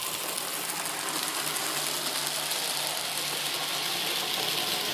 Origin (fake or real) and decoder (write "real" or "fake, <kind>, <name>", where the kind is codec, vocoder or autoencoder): real